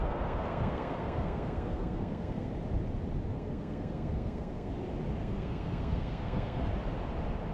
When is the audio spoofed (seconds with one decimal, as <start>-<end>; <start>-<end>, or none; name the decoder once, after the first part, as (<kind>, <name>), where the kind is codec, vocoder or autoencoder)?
0.0-2.5 (codec, SNAC); 3.3-4.7; 5.2-6.7